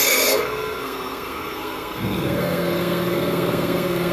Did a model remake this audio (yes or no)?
yes